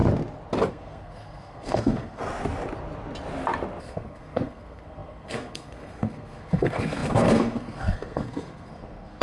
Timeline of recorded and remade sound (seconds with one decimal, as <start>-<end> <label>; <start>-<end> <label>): 0.0-0.7 recorded; 0.7-2.2 remade; 2.2-3.8 recorded; 3.8-9.2 remade